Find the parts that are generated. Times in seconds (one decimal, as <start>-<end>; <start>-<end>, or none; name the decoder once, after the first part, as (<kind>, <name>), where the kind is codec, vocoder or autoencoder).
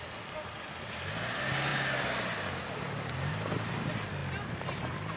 none